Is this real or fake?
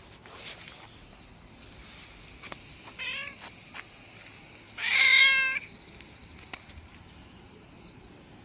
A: real